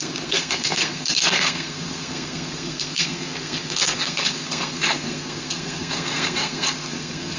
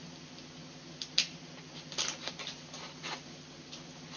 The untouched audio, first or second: second